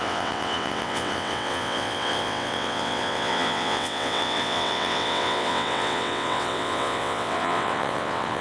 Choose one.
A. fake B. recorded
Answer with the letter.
A